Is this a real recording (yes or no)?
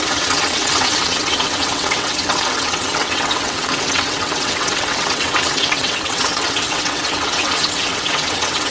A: no